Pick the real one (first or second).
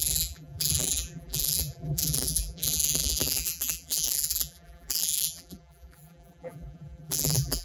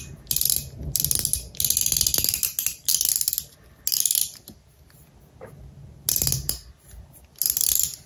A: second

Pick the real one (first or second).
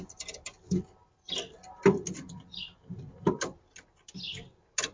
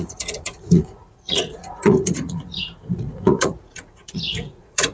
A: first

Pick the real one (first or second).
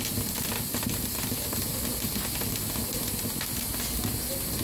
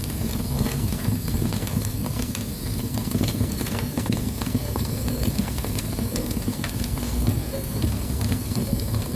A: first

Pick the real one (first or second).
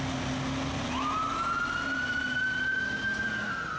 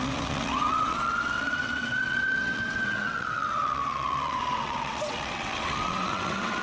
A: first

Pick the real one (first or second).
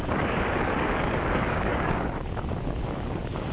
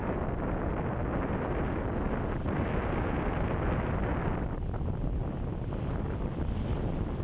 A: second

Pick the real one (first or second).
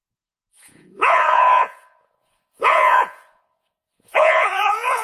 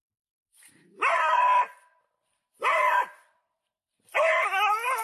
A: second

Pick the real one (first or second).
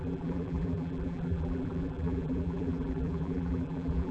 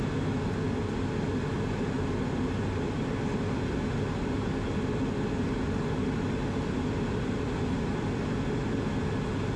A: second